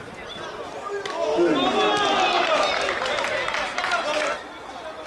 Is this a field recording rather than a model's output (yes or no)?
yes